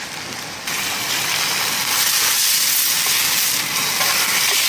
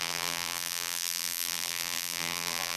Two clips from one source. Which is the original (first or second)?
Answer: first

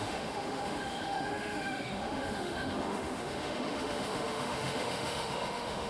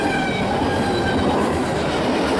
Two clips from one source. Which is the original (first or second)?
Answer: second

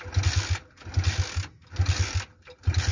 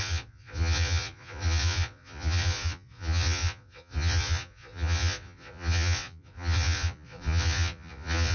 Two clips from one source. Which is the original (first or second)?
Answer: first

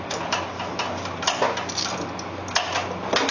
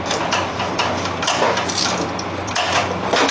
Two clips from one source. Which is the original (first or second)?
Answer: first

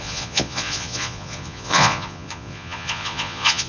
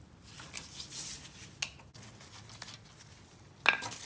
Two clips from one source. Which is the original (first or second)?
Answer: second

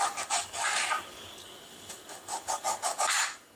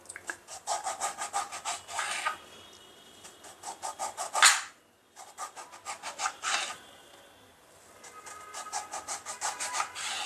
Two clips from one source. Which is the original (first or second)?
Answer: second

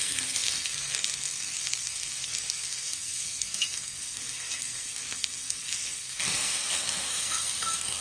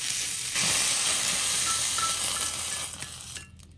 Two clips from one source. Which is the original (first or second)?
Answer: second